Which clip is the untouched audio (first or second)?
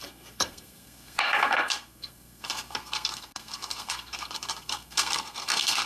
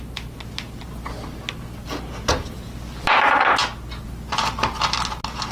second